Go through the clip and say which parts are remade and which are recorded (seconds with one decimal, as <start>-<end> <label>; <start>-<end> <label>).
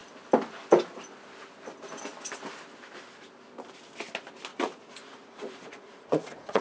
0.0-4.5 recorded; 4.5-6.6 remade